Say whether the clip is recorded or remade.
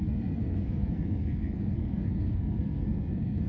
remade